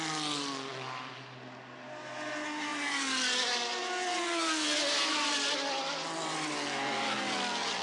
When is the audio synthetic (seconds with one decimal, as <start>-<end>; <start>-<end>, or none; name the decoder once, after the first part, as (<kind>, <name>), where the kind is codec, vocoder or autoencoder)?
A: none